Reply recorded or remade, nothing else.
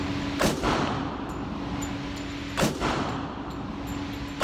recorded